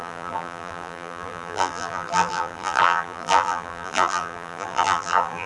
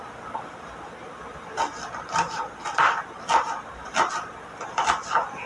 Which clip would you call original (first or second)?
second